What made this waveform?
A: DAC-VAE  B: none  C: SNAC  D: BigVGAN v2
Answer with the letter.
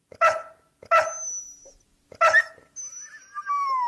B